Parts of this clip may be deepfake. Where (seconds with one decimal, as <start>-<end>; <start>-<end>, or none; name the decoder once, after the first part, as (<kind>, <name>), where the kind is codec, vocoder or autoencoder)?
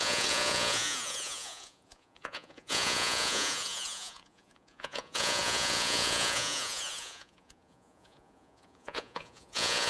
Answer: 0.0-9.9 (vocoder, Vocos)